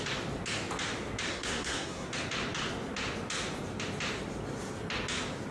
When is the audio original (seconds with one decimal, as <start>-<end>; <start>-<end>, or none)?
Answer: 0.0-1.3; 2.1-5.5

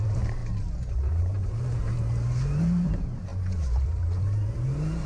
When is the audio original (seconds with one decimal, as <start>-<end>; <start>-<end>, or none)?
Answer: 0.4-1.2; 1.8-2.6